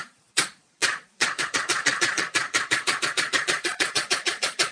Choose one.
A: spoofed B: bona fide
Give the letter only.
A